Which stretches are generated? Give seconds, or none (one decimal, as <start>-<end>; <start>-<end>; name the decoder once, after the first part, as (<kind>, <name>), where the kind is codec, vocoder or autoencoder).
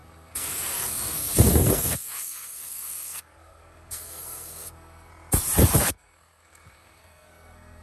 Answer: 0.0-5.1 (codec, SNAC); 5.8-7.8